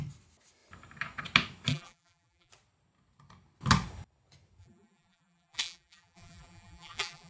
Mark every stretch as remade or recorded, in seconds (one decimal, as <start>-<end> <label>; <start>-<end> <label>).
0.0-1.7 recorded; 1.7-2.5 remade; 2.5-4.6 recorded; 4.6-7.3 remade